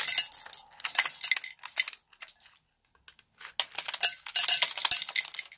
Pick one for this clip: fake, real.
real